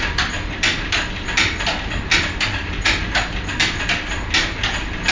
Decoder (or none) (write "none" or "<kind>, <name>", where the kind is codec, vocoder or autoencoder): none